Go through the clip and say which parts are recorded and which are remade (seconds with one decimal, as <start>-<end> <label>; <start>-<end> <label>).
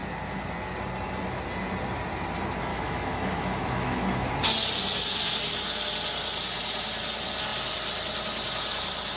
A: 0.0-2.7 recorded; 2.7-4.3 remade; 4.3-9.2 recorded